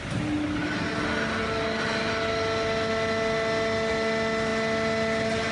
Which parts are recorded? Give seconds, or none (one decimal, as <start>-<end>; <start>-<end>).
0.0-5.5